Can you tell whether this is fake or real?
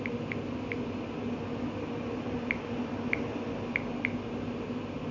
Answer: real